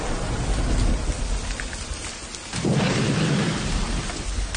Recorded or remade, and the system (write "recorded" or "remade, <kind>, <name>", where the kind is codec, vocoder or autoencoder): recorded